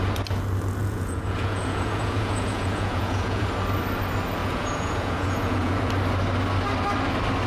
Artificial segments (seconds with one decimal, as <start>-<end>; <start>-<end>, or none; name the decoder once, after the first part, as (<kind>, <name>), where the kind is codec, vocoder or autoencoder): 0.8-3.5 (vocoder, Vocos); 4.4-5.9